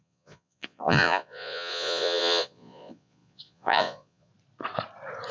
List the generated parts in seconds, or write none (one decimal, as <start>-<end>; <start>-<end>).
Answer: 0.0-4.3